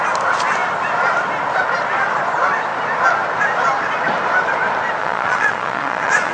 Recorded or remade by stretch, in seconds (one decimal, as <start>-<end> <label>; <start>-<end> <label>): 0.0-5.0 recorded; 5.0-6.3 remade